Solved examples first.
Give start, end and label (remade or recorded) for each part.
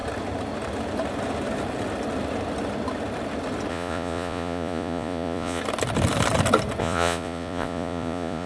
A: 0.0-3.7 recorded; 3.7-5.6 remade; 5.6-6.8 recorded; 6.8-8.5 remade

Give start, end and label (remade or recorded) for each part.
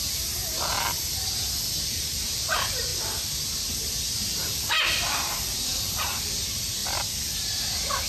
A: 0.0-0.4 remade; 0.4-1.7 recorded; 1.7-2.9 remade; 2.9-4.2 recorded; 4.2-6.8 remade; 6.8-8.1 recorded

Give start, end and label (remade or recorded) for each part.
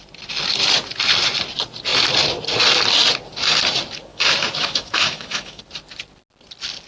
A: 0.0-4.1 recorded; 4.1-5.6 remade; 5.6-6.9 recorded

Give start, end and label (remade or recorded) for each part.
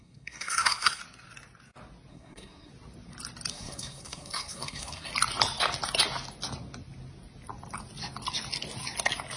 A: 0.0-1.0 remade; 1.0-2.1 recorded; 2.1-2.7 remade; 2.7-3.5 recorded; 3.5-5.1 remade; 5.1-9.4 recorded